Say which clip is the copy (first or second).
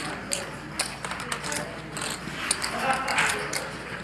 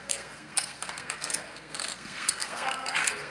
second